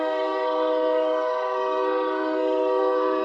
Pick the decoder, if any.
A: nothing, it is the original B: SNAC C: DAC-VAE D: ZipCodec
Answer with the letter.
B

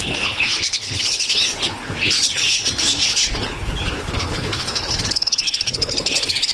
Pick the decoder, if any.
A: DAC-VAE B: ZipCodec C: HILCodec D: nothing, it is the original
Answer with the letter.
C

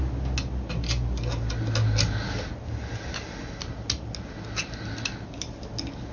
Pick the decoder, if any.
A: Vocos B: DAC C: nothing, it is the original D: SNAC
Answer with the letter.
C